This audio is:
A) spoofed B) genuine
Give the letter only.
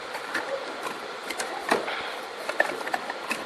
B